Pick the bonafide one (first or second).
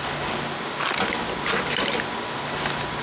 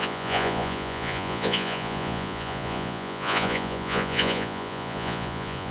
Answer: first